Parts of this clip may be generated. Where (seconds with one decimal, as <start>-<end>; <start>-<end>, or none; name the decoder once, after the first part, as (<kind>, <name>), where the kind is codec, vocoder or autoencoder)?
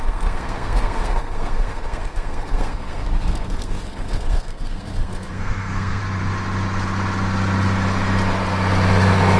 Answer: 0.0-6.0 (codec, SNAC)